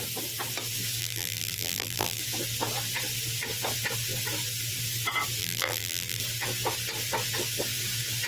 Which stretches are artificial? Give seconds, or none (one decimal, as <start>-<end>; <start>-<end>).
1.0-2.2; 5.4-6.2